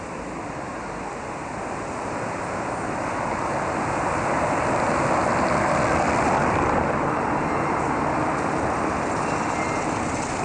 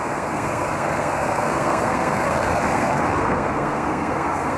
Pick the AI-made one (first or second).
second